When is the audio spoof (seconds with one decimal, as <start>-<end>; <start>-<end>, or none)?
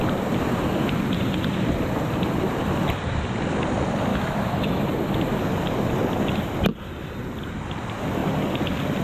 4.1-4.9